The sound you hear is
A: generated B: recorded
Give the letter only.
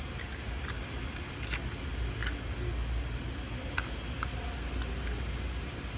B